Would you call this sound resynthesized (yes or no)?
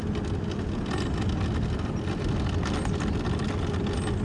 no